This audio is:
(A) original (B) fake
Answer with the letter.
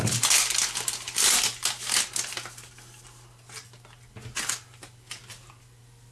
A